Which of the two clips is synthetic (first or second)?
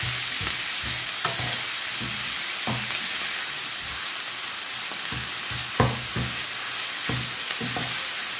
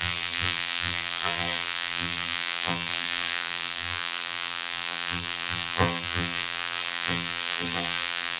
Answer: second